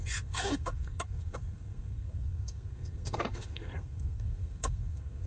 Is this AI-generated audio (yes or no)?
yes